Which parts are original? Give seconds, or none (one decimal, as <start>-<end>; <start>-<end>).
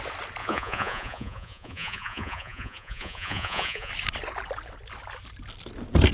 0.0-0.4; 3.9-6.1